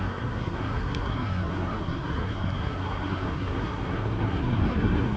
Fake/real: fake